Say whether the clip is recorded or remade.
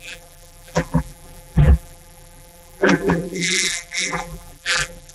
remade